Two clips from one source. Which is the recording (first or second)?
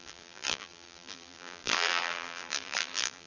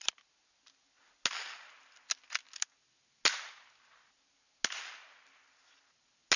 second